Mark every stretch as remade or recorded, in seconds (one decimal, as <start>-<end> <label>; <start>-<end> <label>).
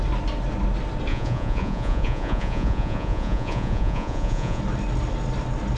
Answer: 0.0-1.1 recorded; 1.1-4.6 remade; 4.6-5.8 recorded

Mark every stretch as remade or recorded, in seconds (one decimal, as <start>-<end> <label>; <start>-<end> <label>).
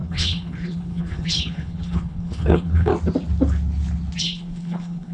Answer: 0.0-2.9 remade; 2.9-4.2 recorded; 4.2-5.1 remade